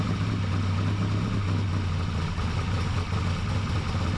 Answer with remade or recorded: recorded